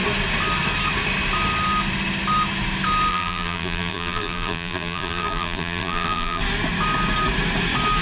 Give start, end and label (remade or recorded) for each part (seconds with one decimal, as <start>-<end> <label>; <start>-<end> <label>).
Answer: 0.0-3.1 recorded; 3.1-6.4 remade; 6.4-8.0 recorded